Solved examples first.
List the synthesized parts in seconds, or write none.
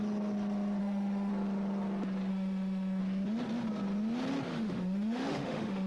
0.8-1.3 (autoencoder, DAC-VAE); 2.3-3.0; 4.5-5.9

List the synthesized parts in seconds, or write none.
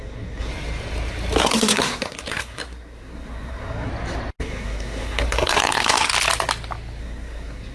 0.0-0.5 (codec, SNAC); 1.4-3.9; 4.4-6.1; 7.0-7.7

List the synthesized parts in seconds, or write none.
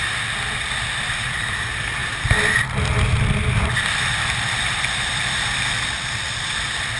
none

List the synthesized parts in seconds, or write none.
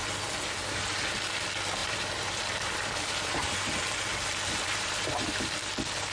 1.8-5.5 (vocoder, BigVGAN v2)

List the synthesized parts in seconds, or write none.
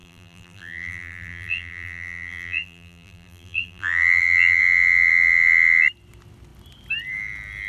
0.0-4.6 (vocoder, BigVGAN v2)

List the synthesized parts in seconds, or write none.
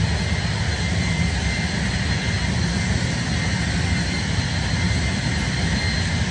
none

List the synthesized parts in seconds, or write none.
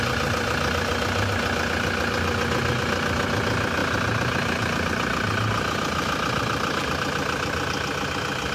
none